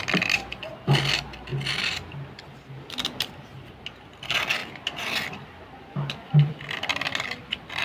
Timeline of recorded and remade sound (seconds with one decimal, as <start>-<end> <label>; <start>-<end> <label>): 0.0-7.8 recorded